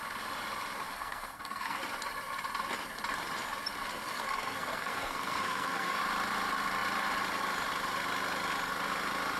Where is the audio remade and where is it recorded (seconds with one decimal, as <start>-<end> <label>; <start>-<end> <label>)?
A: 0.0-0.9 recorded; 0.9-1.8 remade; 1.8-3.9 recorded; 3.9-6.0 remade; 6.0-9.4 recorded